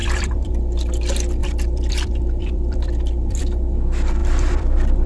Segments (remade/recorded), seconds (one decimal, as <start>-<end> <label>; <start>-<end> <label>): 0.0-0.6 remade; 0.6-1.4 recorded; 1.4-3.4 remade; 3.4-4.2 recorded; 4.2-5.1 remade